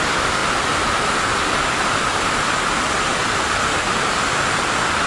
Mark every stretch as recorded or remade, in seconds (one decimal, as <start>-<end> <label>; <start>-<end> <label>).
0.0-5.1 recorded